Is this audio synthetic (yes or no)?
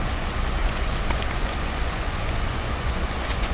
yes